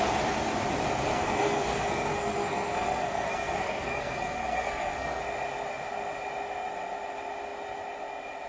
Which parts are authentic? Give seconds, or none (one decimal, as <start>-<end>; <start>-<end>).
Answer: 0.0-1.1; 5.2-8.5